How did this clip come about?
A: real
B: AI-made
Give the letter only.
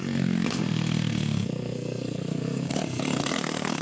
B